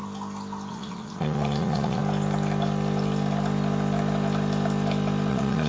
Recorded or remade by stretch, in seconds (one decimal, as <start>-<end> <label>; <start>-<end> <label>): 0.0-0.7 recorded; 0.7-2.0 remade; 2.0-5.3 recorded; 5.3-5.7 remade